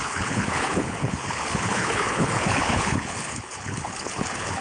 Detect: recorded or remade remade